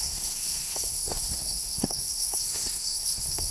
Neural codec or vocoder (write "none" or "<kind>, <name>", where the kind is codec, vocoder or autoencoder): codec, SNAC